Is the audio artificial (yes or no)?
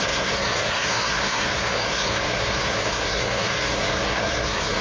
yes